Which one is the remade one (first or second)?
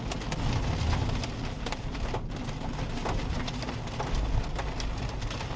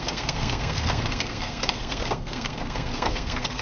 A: second